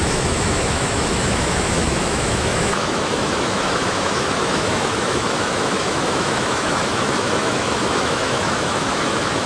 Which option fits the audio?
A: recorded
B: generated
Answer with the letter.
B